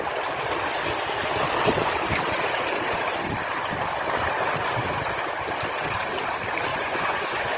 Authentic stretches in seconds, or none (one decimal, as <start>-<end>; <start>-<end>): 0.0-6.7